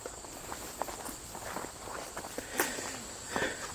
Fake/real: real